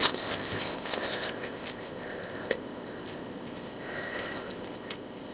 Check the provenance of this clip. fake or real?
fake